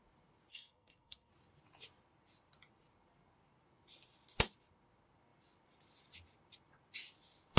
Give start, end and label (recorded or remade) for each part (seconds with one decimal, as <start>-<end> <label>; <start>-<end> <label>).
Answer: 0.0-0.5 recorded; 0.5-1.3 remade; 1.3-7.6 recorded